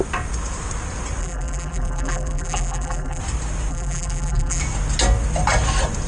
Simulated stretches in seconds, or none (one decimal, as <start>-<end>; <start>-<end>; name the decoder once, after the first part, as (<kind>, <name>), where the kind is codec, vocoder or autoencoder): 1.2-3.2 (vocoder, BigVGAN v2); 3.7-4.6